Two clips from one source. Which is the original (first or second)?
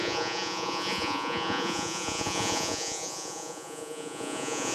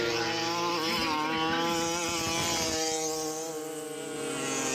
second